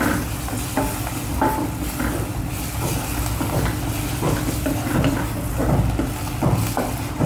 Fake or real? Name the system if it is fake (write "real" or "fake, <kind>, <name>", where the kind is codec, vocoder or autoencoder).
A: real